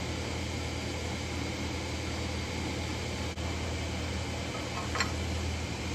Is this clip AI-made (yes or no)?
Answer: no